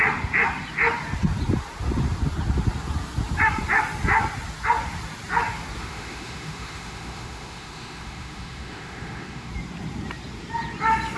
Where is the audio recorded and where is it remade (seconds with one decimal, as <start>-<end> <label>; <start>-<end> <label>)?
0.0-5.8 recorded; 5.8-9.5 remade; 9.5-11.2 recorded